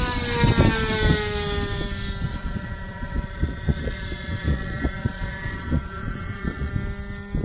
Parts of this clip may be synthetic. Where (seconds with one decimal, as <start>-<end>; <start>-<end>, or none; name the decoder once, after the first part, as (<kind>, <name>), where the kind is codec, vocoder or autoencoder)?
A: 2.3-6.7 (vocoder, Vocos)